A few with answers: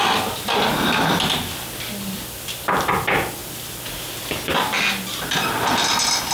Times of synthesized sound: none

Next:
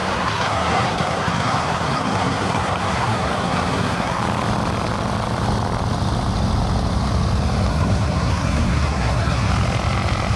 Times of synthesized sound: 0.0-4.2 (codec, SNAC); 7.7-9.5